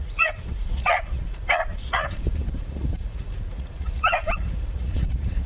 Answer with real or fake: fake